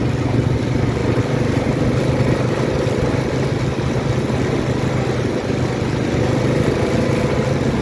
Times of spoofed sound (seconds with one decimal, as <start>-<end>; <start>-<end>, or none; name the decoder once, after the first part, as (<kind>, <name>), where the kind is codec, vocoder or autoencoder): 1.0-1.8 (vocoder, BigVGAN v2)